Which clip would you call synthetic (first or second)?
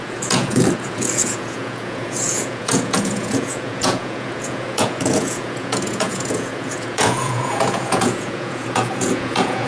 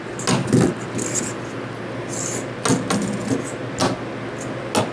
first